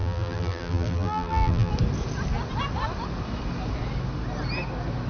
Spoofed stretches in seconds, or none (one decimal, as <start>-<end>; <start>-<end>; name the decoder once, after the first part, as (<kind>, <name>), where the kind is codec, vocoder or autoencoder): 0.0-1.7 (vocoder, BigVGAN v2)